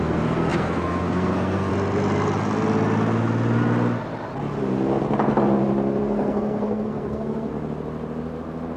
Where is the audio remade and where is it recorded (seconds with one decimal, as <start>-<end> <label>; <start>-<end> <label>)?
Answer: 0.0-1.7 remade; 1.7-6.0 recorded; 6.0-7.5 remade; 7.5-8.8 recorded